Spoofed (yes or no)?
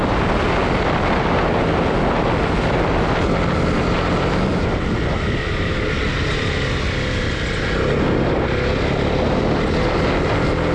no